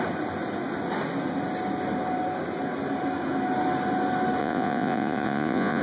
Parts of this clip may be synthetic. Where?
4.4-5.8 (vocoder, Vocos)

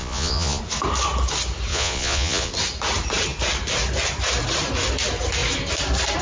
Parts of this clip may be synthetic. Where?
0.0-0.6 (vocoder, Vocos); 1.7-2.5